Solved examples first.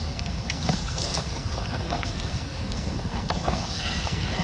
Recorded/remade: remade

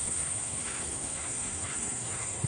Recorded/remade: remade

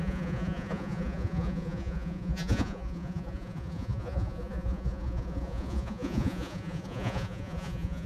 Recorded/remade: remade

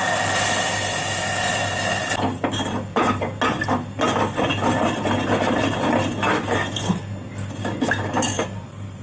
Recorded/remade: recorded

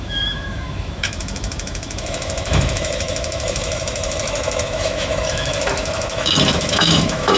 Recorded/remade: remade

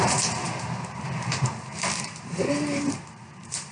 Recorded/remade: remade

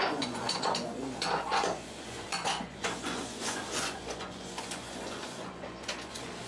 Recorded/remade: remade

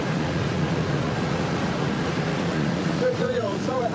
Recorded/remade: remade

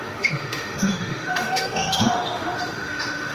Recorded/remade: remade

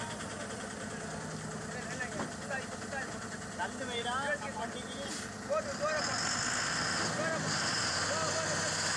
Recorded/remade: recorded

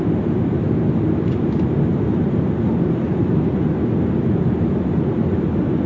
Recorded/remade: recorded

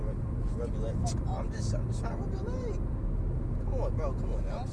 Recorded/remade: recorded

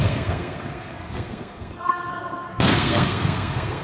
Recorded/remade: remade